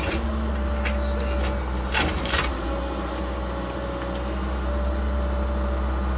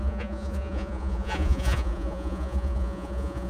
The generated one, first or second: second